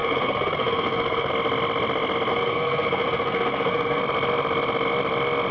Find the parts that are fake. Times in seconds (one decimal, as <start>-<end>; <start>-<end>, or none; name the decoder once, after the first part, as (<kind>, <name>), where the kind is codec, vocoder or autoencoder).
0.0-1.3 (codec, SNAC); 2.3-4.0